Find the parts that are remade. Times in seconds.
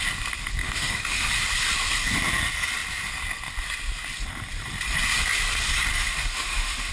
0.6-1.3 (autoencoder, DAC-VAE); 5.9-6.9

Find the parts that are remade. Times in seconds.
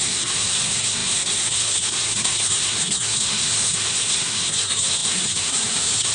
0.0-6.1 (codec, SNAC)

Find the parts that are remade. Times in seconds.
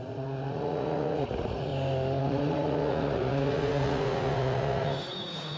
0.0-1.7 (vocoder, Vocos); 2.2-5.6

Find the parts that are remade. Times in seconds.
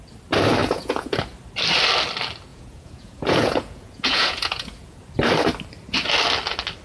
0.6-1.2 (vocoder, Vocos); 2.5-5.1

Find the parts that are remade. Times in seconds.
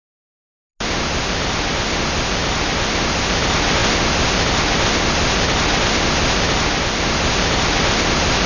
none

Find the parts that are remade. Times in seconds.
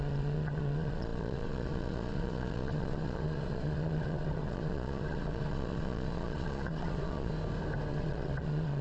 0.0-7.3 (vocoder, Vocos); 7.9-8.8